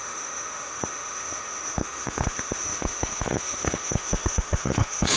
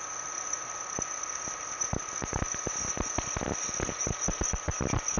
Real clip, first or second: second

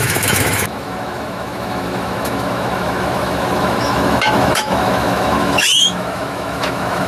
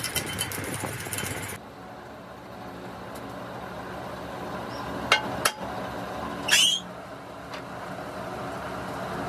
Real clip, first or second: second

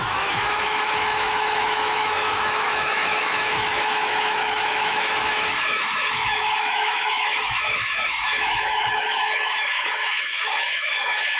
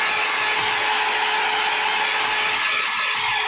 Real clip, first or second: second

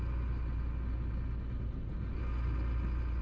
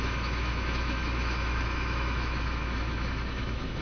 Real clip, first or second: first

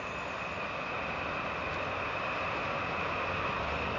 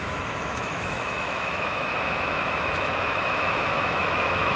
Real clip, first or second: first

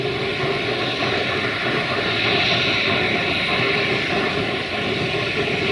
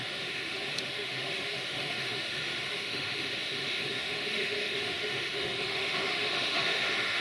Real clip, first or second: first